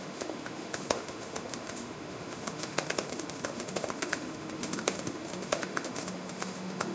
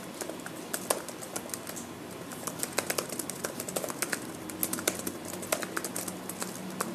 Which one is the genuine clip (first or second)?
second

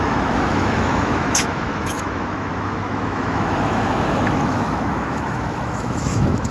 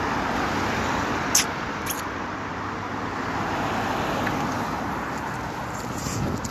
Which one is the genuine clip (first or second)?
second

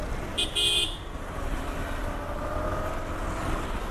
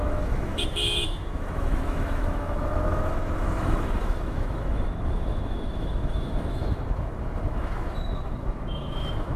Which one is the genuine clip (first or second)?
first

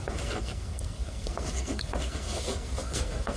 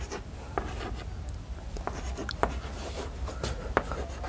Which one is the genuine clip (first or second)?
second